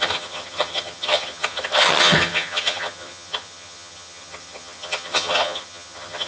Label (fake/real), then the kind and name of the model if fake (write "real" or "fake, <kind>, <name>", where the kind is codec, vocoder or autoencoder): fake, vocoder, HiFi-GAN